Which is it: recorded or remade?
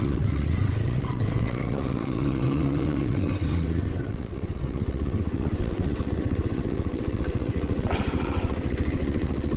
remade